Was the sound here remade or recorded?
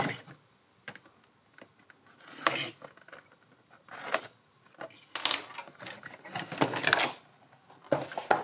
recorded